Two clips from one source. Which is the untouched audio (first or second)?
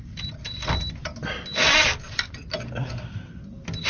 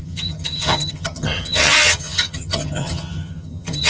first